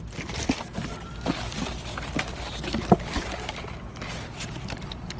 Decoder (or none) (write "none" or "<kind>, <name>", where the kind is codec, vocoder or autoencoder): none